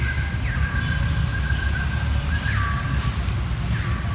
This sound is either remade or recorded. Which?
recorded